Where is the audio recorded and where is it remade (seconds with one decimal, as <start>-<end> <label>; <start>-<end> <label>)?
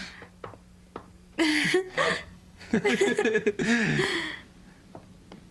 0.0-1.5 recorded; 1.5-3.5 remade; 3.5-5.5 recorded